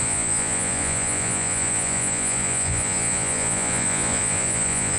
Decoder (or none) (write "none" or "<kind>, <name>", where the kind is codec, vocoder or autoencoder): vocoder, Vocos